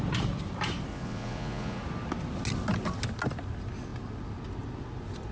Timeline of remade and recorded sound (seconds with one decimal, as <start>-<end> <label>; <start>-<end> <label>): 0.0-0.9 recorded; 0.9-1.8 remade; 1.8-5.3 recorded